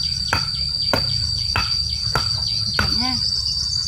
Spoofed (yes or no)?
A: no